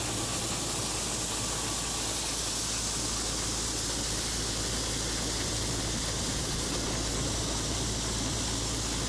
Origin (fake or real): real